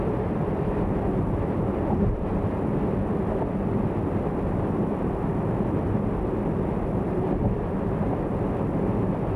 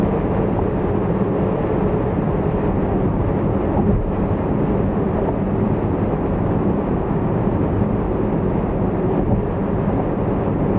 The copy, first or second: first